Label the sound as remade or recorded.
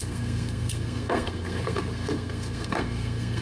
remade